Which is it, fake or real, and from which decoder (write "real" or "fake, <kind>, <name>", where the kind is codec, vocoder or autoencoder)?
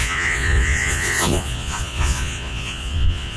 fake, vocoder, Vocos